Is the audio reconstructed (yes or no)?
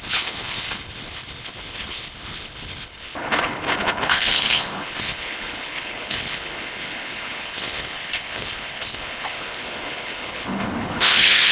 yes